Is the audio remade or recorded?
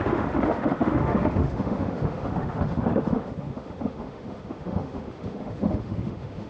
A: remade